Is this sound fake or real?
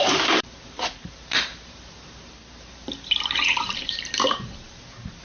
fake